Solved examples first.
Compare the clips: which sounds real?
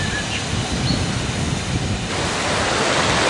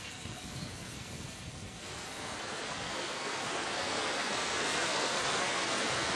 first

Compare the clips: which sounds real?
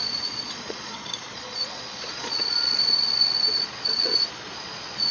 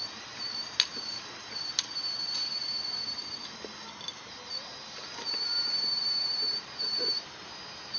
second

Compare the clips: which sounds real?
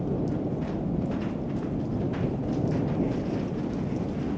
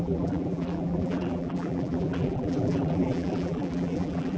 first